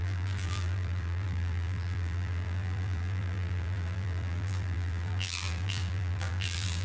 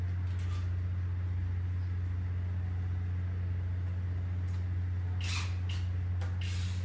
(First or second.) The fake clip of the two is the first